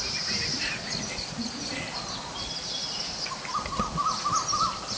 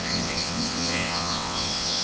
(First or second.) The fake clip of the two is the second